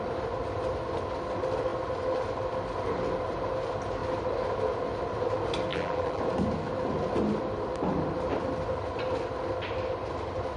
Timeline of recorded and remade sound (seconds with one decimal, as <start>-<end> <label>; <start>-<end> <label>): 0.0-5.7 recorded; 5.7-6.2 remade; 6.2-10.6 recorded

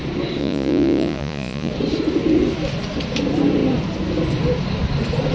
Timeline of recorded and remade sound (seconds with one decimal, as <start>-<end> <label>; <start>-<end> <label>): 0.0-0.4 recorded; 0.4-1.7 remade; 1.7-5.3 recorded